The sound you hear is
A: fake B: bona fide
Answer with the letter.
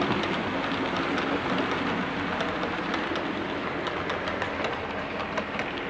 B